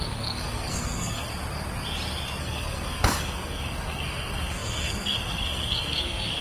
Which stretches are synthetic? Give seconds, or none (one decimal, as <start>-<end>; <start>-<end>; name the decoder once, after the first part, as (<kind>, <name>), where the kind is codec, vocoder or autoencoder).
0.0-1.3 (codec, SNAC); 2.4-6.4